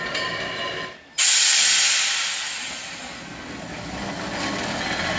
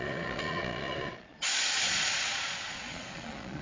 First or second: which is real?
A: first